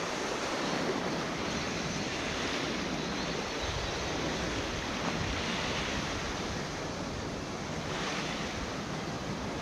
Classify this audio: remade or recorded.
recorded